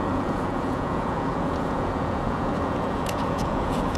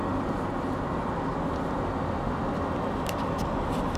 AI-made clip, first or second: first